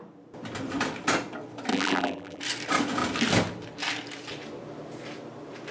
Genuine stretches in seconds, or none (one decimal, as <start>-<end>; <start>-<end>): 0.0-1.7; 2.4-5.7